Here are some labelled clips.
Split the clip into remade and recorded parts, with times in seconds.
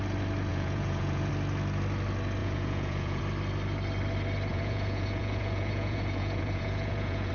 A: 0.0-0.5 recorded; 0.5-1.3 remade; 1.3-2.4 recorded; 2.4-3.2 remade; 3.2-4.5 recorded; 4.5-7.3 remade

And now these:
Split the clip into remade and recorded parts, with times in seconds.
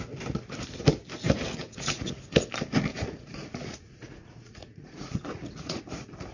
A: 0.0-1.6 recorded; 1.6-2.5 remade; 2.5-2.9 recorded; 2.9-5.8 remade; 5.8-6.3 recorded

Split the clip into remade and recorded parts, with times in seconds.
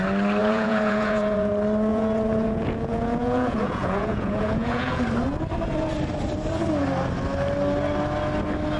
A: 0.0-0.4 recorded; 0.4-1.5 remade; 1.5-1.9 recorded; 1.9-5.0 remade; 5.0-8.8 recorded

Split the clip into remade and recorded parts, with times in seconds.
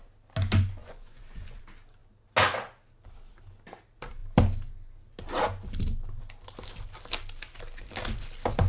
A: 0.0-0.8 recorded; 0.8-1.6 remade; 1.6-8.7 recorded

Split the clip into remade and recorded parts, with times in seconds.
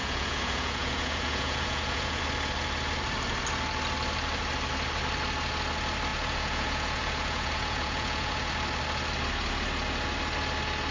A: 0.0-2.2 remade; 2.2-6.1 recorded; 6.1-8.5 remade; 8.5-10.9 recorded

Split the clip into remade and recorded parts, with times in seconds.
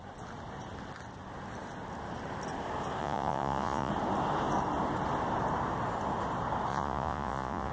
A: 0.0-3.0 recorded; 3.0-3.9 remade; 3.9-6.7 recorded; 6.7-7.7 remade